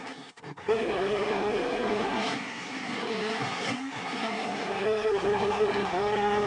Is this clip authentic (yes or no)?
no